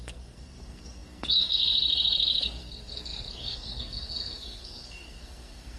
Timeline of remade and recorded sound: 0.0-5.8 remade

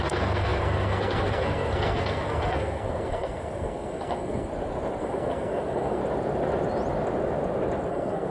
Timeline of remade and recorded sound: 0.0-4.5 remade; 4.5-5.0 recorded; 5.0-6.0 remade; 6.0-7.9 recorded; 7.9-8.3 remade

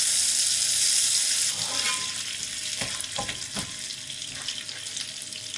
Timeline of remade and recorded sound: 0.0-5.6 recorded

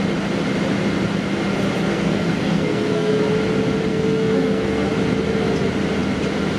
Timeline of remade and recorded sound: 0.0-1.9 recorded; 1.9-3.2 remade; 3.2-3.9 recorded; 3.9-4.9 remade; 4.9-6.6 recorded